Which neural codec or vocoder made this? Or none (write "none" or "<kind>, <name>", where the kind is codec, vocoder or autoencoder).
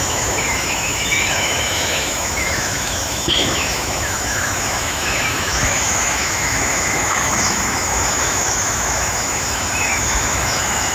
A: autoencoder, DAC-VAE